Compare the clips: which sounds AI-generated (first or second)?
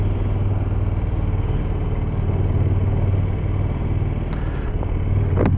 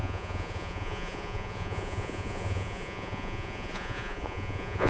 second